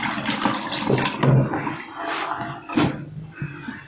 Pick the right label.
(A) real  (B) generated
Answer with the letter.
A